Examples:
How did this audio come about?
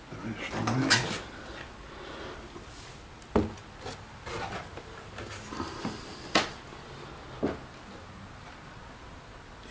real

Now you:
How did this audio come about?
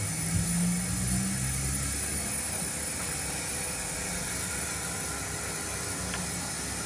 real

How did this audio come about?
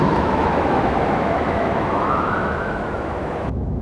fake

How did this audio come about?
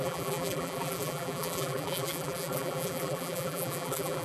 fake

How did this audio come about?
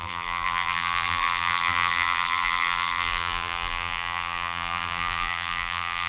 fake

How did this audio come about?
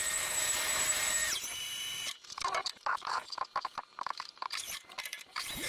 fake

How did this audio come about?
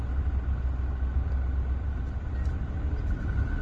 real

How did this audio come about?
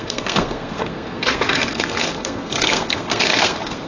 fake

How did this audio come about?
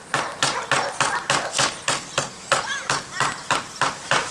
real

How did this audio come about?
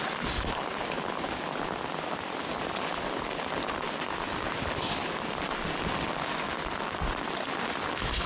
real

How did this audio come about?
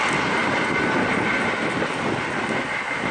real